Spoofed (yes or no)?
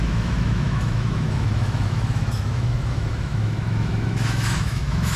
yes